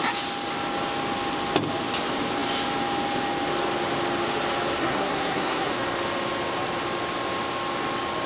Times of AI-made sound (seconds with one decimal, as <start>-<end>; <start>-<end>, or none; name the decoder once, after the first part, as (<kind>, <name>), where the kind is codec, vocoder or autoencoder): 4.8-5.7 (codec, SNAC)